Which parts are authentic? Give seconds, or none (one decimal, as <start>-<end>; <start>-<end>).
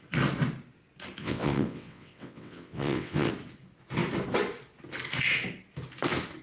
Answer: 0.0-1.2; 3.3-6.4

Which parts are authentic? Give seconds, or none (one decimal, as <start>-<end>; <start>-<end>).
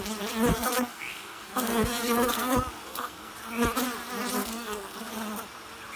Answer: 0.0-0.5; 3.3-4.4; 5.1-6.0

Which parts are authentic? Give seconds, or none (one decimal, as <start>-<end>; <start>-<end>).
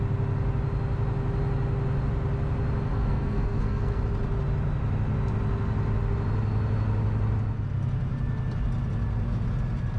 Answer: 0.0-2.9; 4.0-10.0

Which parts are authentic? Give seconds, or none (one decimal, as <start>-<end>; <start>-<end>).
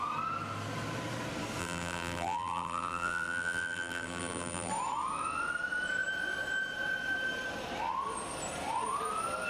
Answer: 0.0-1.6; 4.7-9.5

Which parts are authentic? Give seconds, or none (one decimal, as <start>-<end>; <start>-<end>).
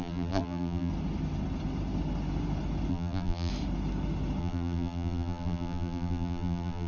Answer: 0.9-2.9; 3.5-4.4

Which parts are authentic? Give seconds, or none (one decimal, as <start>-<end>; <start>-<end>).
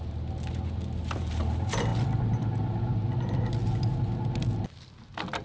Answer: 0.0-5.4